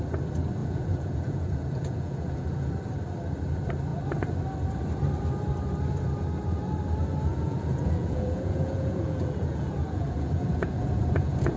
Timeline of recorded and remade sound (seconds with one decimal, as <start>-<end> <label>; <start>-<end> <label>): 0.0-0.6 recorded; 0.6-2.7 remade; 2.7-7.3 recorded; 7.3-11.6 remade